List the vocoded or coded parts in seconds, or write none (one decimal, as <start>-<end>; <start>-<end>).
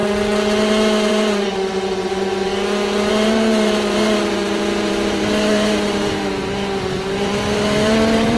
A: 1.1-2.5; 3.1-8.4